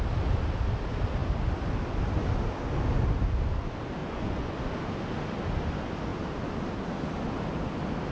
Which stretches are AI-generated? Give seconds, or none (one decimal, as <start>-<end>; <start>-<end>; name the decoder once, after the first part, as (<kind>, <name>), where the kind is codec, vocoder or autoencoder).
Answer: 4.0-4.6 (vocoder, Vocos)